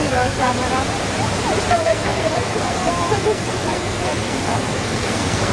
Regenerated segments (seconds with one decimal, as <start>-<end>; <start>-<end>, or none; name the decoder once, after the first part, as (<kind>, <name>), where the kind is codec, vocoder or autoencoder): 0.0-0.5 (codec, SNAC); 1.7-5.5